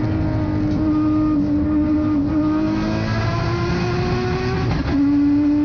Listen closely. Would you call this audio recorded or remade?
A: recorded